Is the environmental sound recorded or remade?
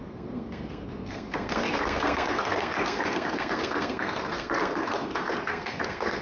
remade